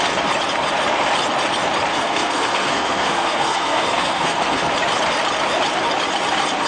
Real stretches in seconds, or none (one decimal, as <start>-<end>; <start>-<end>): 0.0-1.9; 4.6-6.7